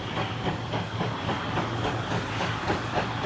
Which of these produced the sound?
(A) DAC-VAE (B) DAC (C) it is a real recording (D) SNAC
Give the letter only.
B